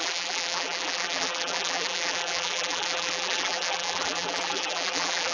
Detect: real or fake fake